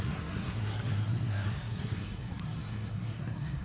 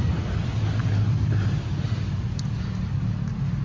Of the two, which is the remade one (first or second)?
first